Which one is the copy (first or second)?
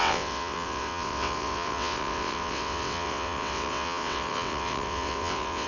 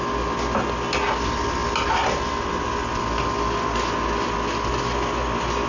first